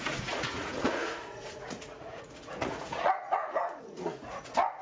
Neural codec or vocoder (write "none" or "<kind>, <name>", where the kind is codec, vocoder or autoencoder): vocoder, Vocos